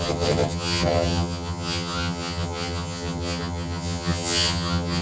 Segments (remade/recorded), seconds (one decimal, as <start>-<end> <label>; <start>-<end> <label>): 0.0-5.0 remade